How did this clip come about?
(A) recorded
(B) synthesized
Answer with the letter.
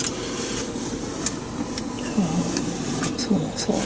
A